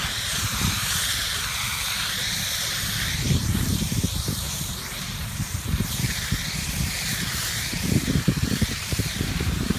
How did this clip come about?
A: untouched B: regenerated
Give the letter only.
B